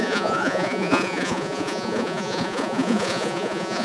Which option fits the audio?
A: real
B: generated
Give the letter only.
B